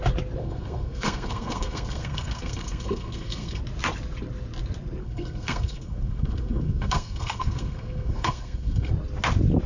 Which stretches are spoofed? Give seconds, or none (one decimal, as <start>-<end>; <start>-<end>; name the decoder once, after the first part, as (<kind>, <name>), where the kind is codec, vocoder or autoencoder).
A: 0.4-3.6 (codec, SNAC); 5.0-8.9